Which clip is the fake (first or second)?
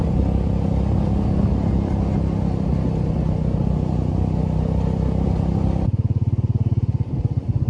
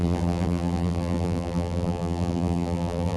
second